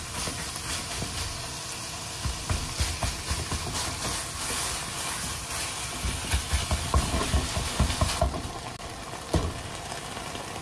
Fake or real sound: real